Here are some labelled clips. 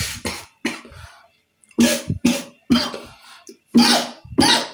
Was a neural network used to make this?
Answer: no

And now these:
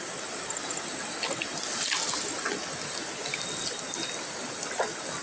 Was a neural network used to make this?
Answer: no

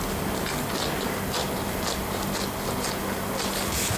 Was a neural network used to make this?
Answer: no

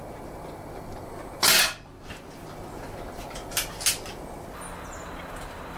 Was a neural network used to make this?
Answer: no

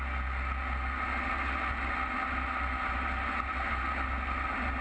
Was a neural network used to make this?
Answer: no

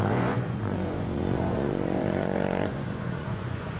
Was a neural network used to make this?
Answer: yes